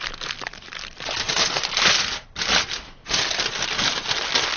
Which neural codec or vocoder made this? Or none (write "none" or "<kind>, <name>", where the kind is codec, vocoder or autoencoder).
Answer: none